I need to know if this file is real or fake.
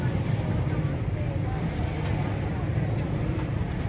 real